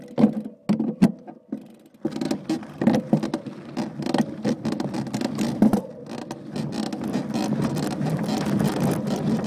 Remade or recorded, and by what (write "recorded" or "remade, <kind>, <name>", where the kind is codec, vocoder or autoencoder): recorded